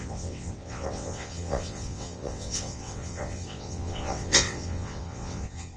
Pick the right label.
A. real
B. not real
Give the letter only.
B